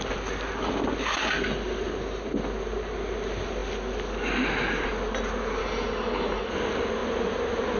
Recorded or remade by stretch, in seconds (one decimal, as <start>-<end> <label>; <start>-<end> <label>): 0.0-5.6 recorded; 5.6-6.5 remade; 6.5-7.8 recorded